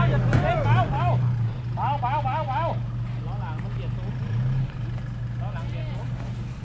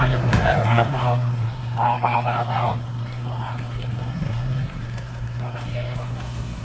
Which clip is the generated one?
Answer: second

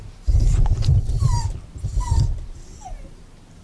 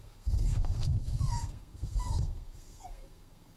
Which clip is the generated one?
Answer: second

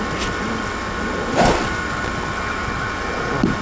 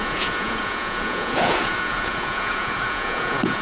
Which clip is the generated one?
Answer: second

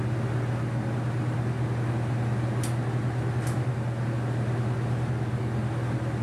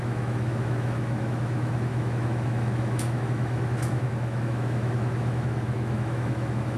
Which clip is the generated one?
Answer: second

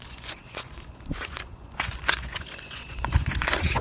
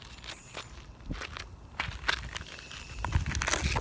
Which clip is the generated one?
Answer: first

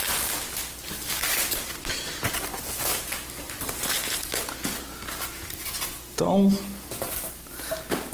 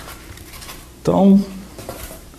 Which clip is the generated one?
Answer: second